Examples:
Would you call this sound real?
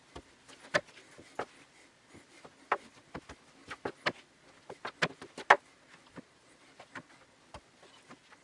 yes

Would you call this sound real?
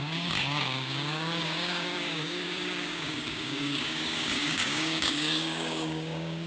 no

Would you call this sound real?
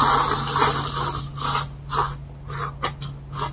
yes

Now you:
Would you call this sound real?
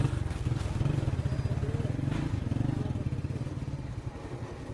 yes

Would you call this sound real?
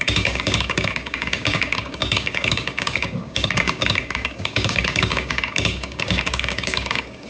no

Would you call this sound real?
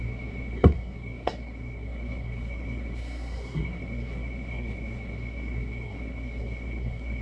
no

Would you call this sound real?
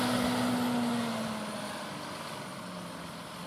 yes